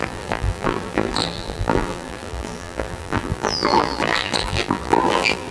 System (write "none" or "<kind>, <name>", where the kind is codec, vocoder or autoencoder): vocoder, BigVGAN v2